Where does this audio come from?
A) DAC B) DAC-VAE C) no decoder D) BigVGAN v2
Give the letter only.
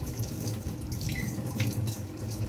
A